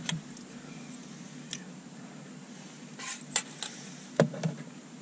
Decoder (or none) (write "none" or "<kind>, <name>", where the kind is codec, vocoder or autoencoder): none